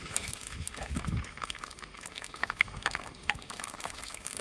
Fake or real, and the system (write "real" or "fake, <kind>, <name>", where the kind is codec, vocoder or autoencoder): fake, autoencoder, DAC-VAE